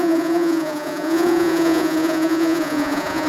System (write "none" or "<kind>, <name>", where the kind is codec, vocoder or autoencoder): vocoder, Vocos